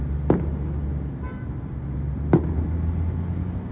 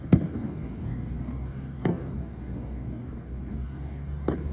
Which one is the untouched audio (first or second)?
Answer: first